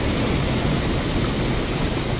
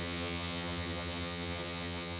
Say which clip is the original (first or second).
first